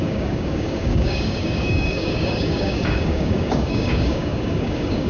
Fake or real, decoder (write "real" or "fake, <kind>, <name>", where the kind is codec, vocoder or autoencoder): fake, codec, DAC